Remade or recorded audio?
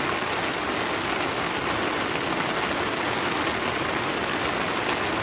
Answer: recorded